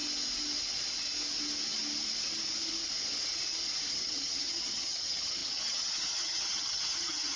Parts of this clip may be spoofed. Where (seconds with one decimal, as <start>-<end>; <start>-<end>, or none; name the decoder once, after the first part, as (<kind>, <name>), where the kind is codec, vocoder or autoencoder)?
3.9-7.4 (vocoder, HiFi-GAN)